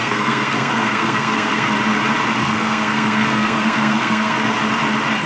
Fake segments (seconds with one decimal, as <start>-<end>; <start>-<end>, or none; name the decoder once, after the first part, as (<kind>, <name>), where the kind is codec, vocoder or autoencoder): 0.0-1.7 (codec, SNAC); 2.4-4.5